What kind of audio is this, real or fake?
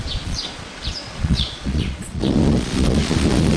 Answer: fake